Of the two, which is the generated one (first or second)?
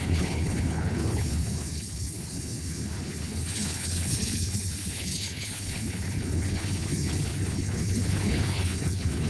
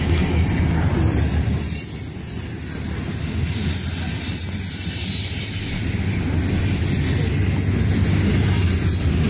first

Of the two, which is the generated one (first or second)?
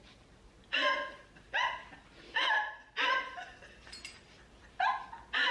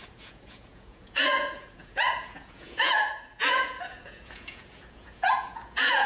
second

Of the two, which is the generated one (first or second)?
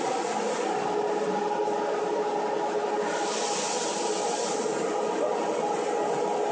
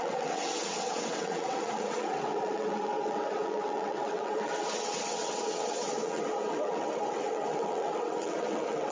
second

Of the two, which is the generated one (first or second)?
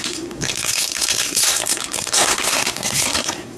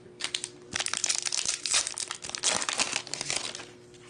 first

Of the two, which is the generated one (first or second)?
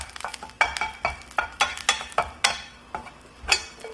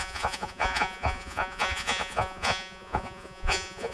second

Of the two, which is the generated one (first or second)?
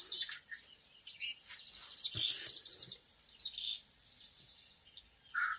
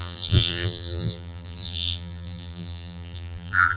second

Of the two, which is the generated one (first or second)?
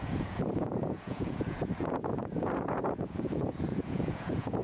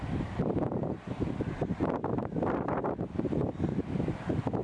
first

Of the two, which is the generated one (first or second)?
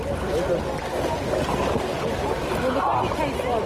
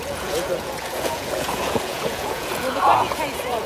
second